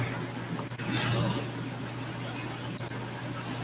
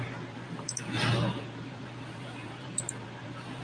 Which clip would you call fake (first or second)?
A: second